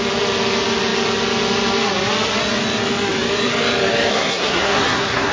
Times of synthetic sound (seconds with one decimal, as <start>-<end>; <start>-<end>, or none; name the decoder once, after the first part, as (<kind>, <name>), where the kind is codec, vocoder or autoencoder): 4.1-5.3 (codec, SNAC)